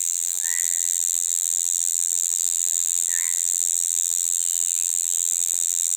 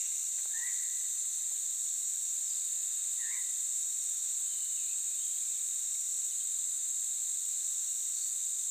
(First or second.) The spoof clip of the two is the first